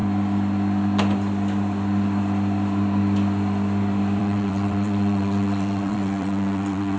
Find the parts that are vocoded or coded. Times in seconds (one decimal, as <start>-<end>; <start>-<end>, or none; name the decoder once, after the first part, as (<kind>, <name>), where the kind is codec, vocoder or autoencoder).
4.2-7.0 (vocoder, WaveNeXt)